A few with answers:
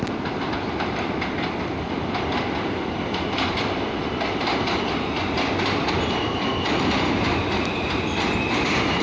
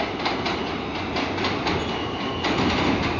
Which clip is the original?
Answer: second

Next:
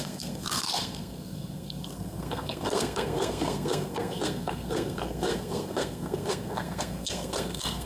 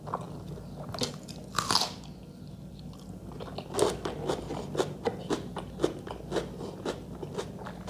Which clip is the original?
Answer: second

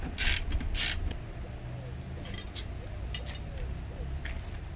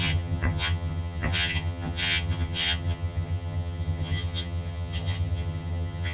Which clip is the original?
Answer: first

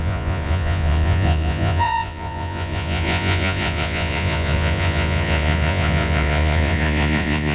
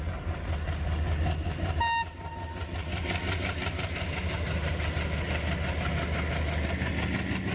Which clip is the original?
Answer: second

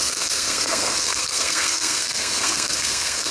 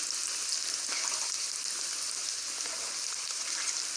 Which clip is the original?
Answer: second